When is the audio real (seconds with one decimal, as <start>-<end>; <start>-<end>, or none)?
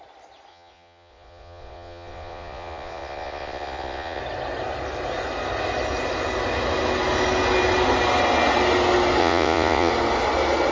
0.0-0.5; 4.2-9.2; 9.9-10.7